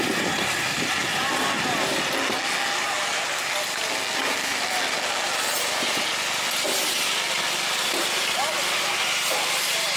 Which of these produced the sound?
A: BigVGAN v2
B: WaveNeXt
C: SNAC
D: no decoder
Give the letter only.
D